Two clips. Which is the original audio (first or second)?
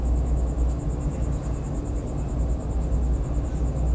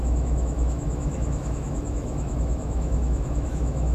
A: first